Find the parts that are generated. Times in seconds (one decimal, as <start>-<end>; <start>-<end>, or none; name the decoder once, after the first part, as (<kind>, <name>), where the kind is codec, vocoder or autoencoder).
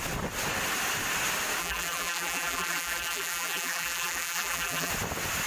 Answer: 1.6-4.9 (vocoder, BigVGAN v2)